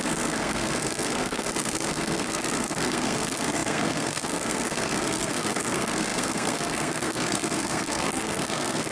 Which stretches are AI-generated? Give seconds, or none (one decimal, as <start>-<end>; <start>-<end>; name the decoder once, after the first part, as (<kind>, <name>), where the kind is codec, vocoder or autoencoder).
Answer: 0.0-8.9 (codec, SNAC)